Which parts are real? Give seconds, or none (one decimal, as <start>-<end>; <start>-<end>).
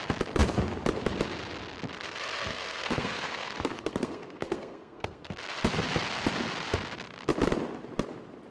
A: 0.0-1.9; 5.4-8.5